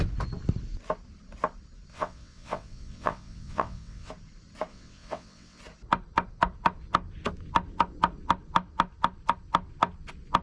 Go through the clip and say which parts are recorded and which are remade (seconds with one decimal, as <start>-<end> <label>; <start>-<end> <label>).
0.0-1.9 recorded; 1.9-4.1 remade; 4.1-4.7 recorded; 4.7-5.6 remade; 5.6-10.4 recorded